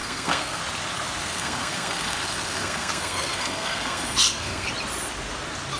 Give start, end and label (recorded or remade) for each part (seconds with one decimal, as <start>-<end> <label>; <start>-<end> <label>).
0.0-0.6 remade; 0.6-1.2 recorded; 1.2-4.7 remade; 4.7-5.8 recorded